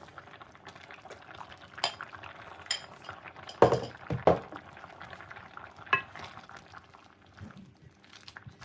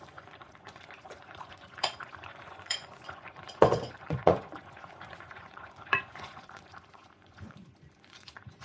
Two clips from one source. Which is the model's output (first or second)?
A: second